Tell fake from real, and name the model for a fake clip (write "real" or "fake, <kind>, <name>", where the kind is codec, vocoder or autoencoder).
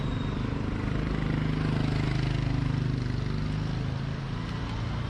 real